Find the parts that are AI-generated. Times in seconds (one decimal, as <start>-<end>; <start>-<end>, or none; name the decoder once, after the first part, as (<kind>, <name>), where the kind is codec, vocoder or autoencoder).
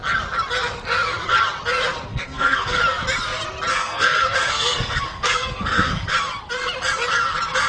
2.1-2.8 (codec, SNAC); 3.7-6.1